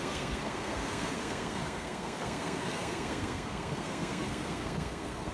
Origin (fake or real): fake